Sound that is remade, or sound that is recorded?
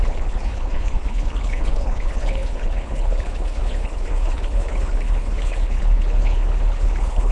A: remade